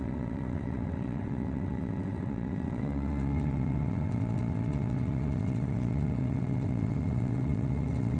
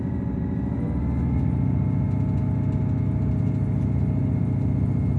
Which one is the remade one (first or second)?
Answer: first